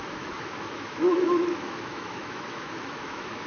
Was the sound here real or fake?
fake